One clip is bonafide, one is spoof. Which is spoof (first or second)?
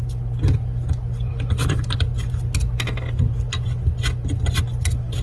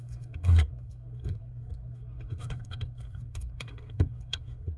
second